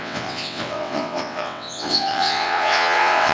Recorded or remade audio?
remade